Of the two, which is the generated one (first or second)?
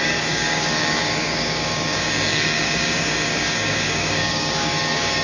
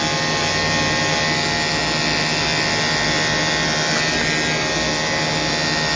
first